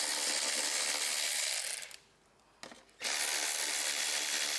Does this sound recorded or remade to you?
recorded